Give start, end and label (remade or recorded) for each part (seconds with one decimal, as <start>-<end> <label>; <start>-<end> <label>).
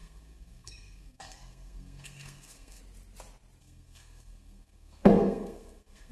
0.0-2.8 remade; 2.8-3.6 recorded; 3.6-6.1 remade